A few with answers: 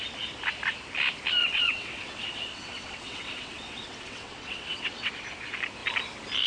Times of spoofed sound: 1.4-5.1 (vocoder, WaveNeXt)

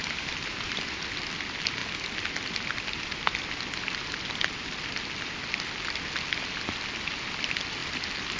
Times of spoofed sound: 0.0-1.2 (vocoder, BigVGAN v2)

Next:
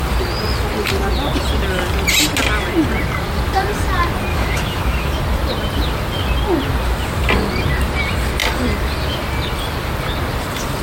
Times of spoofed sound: 4.3-5.2 (autoencoder, DAC-VAE)

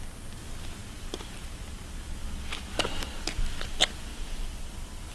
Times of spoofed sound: 0.8-3.4 (vocoder, BigVGAN v2); 4.1-5.1

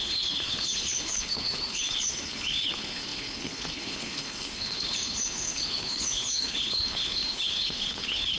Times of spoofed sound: 0.0-8.4 (codec, HILCodec)

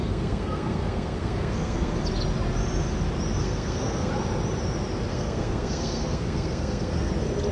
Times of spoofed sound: 0.0-2.0 (codec, SNAC); 3.4-4.1; 5.1-7.1

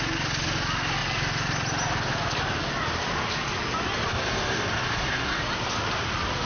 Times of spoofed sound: 4.1-5.4 (codec, DAC)

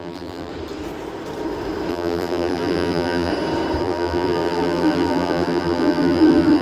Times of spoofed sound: 0.0-0.5 (vocoder, BigVGAN v2); 1.9-3.3; 3.8-6.6